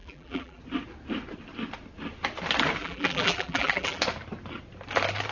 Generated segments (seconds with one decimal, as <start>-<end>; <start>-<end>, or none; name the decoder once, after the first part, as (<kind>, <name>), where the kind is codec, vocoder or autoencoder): 0.0-0.6 (vocoder, BigVGAN v2); 2.8-4.0